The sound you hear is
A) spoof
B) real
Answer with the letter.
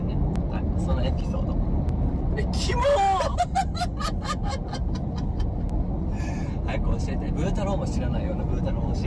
B